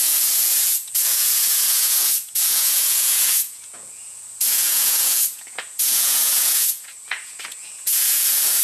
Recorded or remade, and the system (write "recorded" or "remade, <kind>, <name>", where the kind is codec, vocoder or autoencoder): remade, vocoder, Vocos